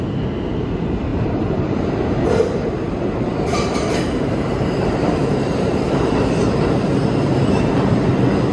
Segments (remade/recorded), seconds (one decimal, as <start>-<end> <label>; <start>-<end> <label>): 0.0-1.1 recorded; 1.1-6.2 remade; 6.2-7.3 recorded; 7.3-8.1 remade; 8.1-8.5 recorded